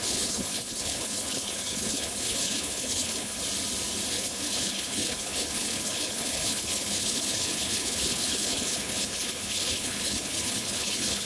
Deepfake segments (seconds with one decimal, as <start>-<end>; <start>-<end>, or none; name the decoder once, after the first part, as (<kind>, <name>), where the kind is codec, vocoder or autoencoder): 0.0-3.4 (codec, HILCodec); 4.1-11.3